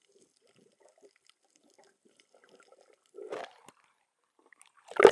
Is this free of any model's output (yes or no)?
yes